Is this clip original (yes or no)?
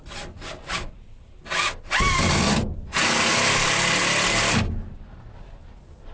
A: yes